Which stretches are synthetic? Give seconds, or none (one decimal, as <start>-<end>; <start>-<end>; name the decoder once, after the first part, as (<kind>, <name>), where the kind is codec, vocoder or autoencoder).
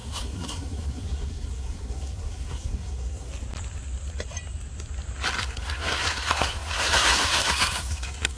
0.0-3.3 (codec, SNAC); 5.4-8.4